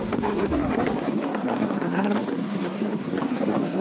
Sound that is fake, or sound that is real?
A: fake